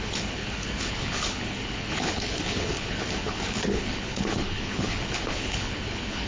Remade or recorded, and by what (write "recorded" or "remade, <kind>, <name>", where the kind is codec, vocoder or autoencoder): remade, codec, HILCodec